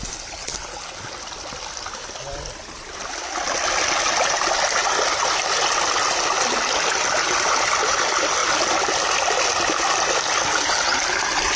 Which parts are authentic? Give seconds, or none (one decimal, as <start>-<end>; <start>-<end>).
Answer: 0.0-11.6